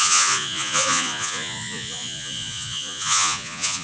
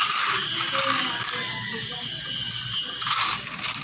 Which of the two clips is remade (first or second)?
first